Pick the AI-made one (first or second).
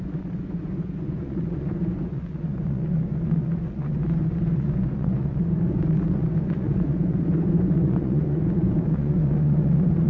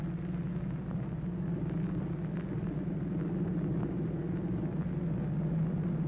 first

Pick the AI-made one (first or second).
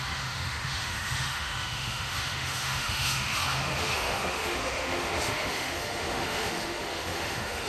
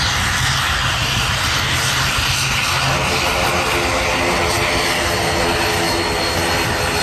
first